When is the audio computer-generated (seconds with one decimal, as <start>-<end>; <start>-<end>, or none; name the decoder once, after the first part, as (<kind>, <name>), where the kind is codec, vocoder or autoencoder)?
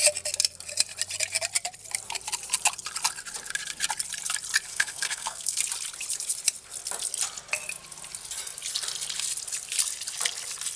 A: 4.7-5.6 (codec, SNAC)